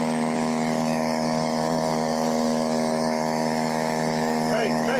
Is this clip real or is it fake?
fake